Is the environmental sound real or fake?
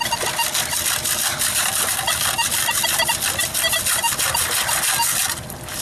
real